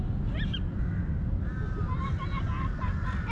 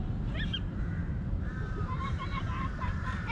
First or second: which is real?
first